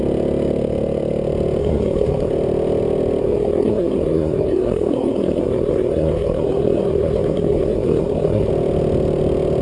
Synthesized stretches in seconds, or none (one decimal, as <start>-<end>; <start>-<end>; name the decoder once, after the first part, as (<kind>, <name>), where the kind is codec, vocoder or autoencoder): 1.6-2.3 (codec, SNAC); 3.2-8.5